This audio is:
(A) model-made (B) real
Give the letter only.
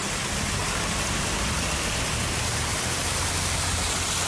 B